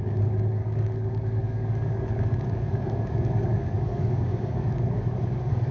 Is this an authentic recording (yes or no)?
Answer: no